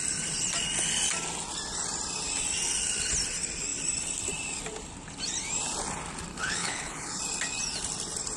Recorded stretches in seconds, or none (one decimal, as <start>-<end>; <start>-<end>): 0.0-6.3; 7.2-8.4